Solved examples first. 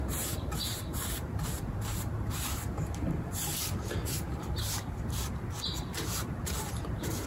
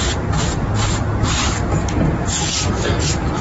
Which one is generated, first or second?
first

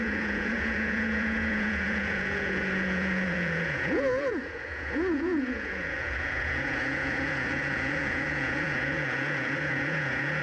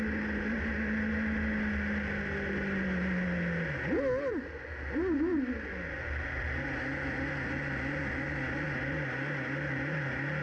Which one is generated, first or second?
first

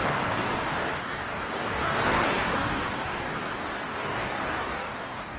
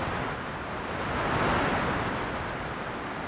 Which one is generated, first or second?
first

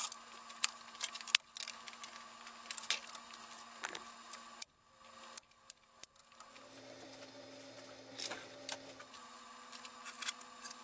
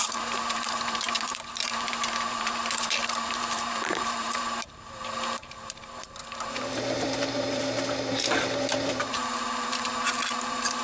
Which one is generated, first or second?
second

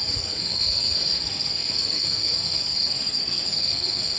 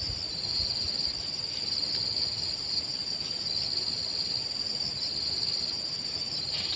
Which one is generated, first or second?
first